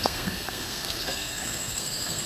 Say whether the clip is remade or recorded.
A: remade